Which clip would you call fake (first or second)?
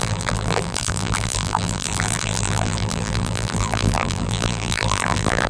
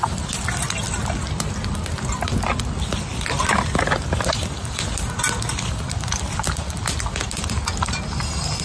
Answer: first